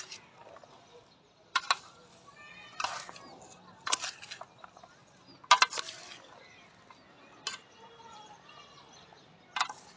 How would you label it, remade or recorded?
recorded